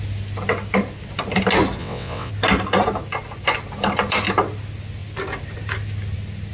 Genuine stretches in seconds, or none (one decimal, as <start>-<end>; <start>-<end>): 0.0-1.8; 2.3-6.5